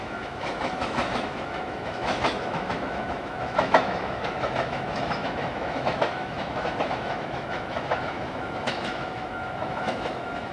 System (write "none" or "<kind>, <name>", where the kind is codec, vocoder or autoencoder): autoencoder, DAC-VAE